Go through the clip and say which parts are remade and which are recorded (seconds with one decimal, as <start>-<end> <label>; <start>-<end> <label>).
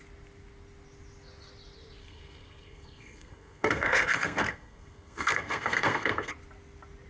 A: 0.0-2.0 recorded; 2.0-6.3 remade; 6.3-7.1 recorded